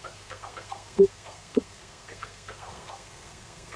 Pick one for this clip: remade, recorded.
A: remade